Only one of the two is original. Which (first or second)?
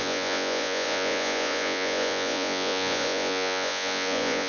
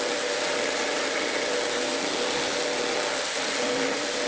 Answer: second